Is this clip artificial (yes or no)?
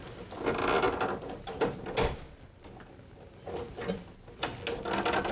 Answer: no